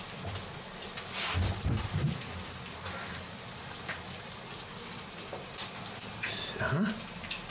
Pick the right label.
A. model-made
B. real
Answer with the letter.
B